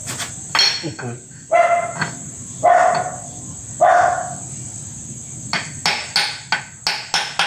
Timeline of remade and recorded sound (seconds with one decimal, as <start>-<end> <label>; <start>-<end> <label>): 0.0-4.1 recorded; 4.1-5.8 remade; 5.8-7.5 recorded